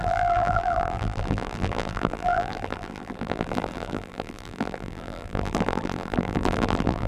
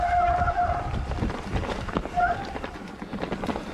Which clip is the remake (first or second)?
first